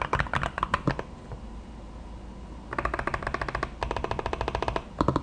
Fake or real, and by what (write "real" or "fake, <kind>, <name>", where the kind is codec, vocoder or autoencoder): real